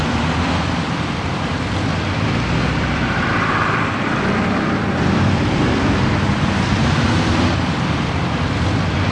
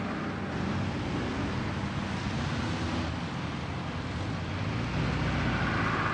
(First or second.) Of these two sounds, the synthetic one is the first